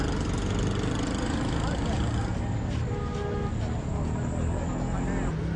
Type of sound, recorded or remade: recorded